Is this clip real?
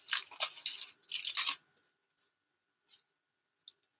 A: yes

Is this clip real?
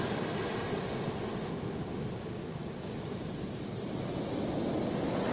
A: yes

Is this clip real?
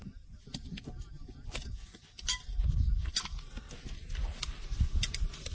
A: yes